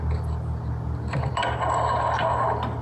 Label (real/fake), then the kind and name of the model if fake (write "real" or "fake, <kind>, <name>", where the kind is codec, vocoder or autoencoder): real